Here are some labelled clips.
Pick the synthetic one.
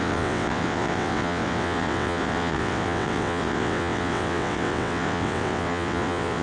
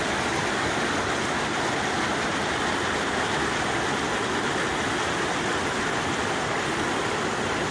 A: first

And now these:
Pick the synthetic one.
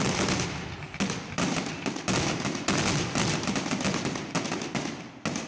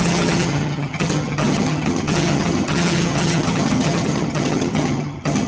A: second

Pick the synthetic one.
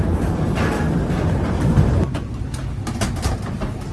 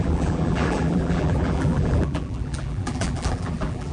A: second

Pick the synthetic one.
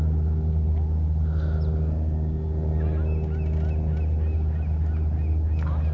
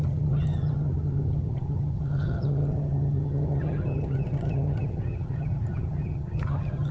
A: second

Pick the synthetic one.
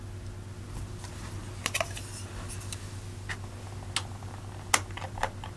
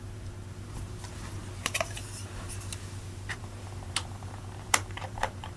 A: second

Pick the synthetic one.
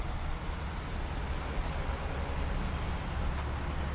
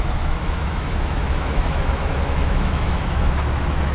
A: second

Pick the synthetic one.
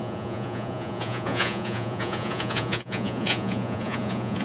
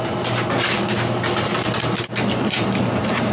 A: first